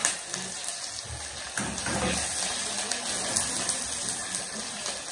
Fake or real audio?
real